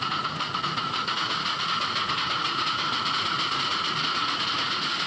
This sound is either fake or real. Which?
fake